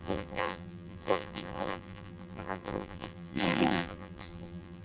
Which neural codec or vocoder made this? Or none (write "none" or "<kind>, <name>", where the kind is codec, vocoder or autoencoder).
vocoder, BigVGAN v2